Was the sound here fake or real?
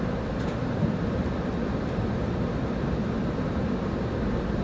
real